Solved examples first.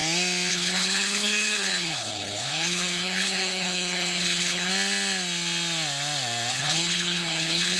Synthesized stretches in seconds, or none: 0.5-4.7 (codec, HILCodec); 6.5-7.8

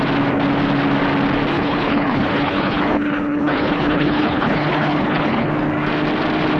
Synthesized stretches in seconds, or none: 1.5-5.5 (codec, HILCodec)